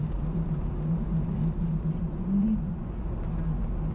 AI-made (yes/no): no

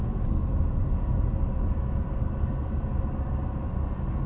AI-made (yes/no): no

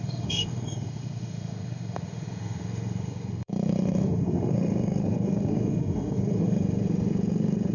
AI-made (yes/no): yes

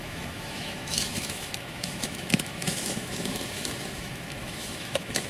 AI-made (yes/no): yes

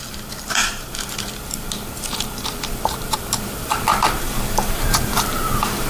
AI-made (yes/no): yes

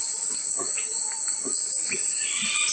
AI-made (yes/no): no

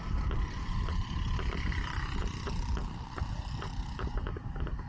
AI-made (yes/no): no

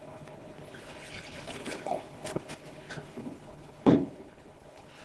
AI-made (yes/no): yes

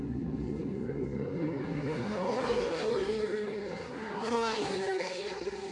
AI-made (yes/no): yes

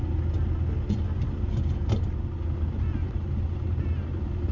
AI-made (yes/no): no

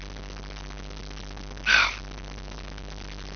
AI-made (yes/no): no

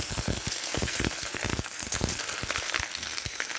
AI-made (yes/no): yes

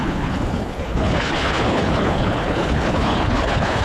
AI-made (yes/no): yes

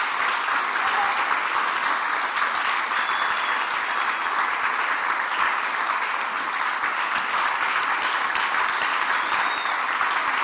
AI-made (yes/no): no